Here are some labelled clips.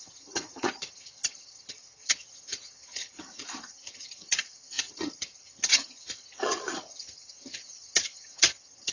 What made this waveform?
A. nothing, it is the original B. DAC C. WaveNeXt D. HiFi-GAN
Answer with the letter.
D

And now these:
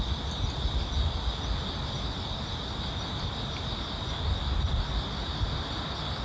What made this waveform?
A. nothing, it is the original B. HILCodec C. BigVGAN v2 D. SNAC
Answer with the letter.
A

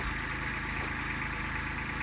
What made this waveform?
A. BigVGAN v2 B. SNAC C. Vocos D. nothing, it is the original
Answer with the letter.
D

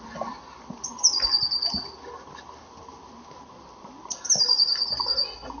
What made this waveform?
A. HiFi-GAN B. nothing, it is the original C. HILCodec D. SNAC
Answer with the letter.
B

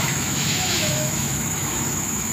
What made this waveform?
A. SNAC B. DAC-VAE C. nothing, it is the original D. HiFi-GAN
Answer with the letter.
B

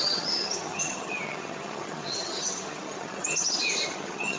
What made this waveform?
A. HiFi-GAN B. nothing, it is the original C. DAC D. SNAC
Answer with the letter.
A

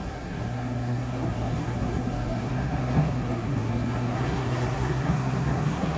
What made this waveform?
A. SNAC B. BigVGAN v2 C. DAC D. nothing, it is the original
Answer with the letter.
A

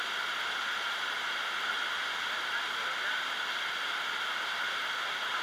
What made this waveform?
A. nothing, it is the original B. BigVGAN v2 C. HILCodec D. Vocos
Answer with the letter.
A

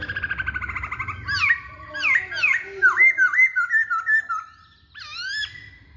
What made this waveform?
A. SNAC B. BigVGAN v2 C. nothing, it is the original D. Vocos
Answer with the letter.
C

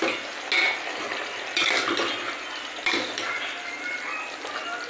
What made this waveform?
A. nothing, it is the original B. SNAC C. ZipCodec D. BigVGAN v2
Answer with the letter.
A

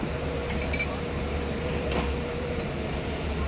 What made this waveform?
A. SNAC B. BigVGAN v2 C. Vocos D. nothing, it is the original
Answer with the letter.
B